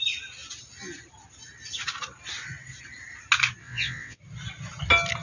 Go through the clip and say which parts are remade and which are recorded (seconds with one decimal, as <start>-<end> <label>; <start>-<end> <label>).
0.0-3.6 recorded; 3.6-4.2 remade; 4.2-5.2 recorded